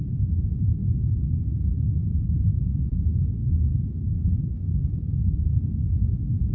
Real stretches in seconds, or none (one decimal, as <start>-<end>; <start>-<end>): 0.0-0.8; 1.4-6.5